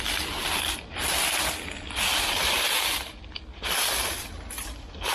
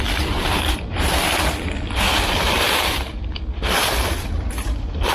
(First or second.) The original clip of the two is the first